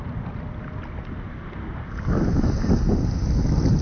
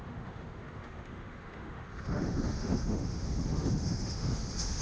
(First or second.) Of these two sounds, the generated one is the second